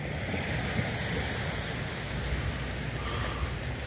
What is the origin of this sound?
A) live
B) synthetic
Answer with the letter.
A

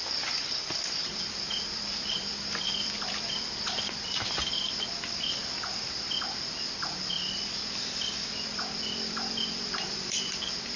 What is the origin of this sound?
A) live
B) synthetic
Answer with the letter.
B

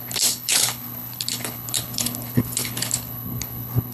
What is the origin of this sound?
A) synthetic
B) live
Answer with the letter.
A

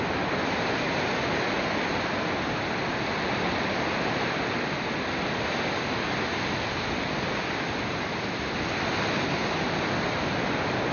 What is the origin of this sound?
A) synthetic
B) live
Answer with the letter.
B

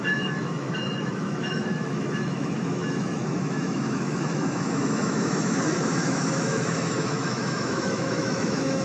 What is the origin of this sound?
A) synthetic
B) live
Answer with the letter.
A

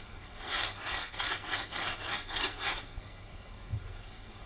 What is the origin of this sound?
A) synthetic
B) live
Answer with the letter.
A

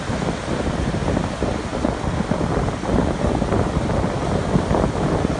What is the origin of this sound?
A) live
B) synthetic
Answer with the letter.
A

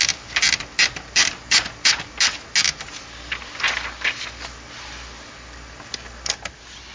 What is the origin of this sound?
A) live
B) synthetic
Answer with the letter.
A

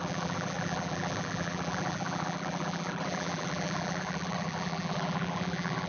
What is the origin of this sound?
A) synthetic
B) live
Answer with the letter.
A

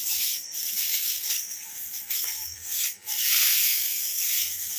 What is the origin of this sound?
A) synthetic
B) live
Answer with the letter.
A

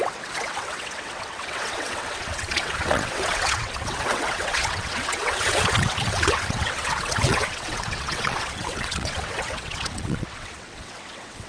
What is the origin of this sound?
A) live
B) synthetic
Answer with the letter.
B